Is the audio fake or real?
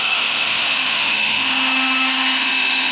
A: fake